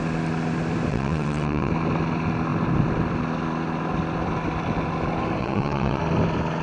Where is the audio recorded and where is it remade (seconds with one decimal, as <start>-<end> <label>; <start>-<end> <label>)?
0.0-0.9 recorded; 0.9-1.7 remade; 1.7-5.4 recorded; 5.4-6.0 remade; 6.0-6.6 recorded